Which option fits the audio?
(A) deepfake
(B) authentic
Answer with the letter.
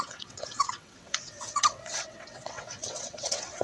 A